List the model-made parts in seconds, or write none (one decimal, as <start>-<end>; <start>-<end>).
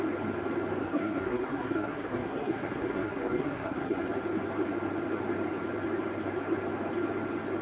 0.8-4.1